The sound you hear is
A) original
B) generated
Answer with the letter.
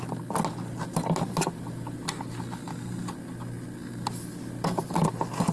A